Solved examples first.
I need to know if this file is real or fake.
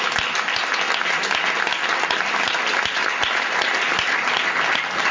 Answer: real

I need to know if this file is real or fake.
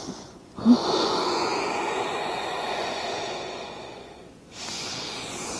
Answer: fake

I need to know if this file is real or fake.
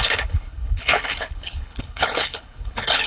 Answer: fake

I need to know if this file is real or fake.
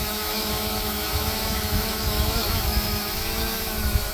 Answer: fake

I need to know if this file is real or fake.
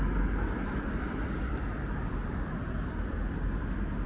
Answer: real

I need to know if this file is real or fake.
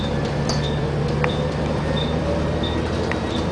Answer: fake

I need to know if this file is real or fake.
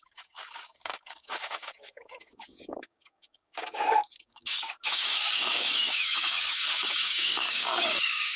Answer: fake